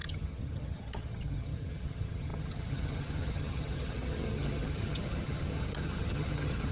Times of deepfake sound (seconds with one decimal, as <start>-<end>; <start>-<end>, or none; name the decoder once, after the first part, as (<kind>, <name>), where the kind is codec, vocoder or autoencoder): 0.0-6.7 (vocoder, HiFi-GAN)